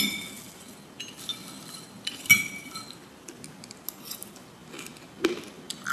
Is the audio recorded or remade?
recorded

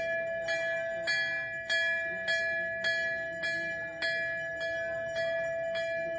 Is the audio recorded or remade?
recorded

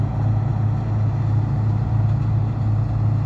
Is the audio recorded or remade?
recorded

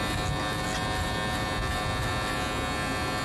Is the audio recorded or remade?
recorded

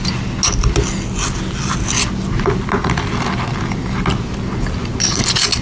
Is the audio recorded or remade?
recorded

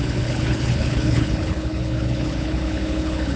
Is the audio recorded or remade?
remade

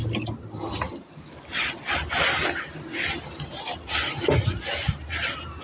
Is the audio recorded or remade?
recorded